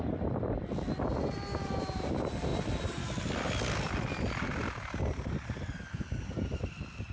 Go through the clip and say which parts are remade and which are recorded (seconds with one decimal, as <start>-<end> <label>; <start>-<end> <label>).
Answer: 0.0-7.1 recorded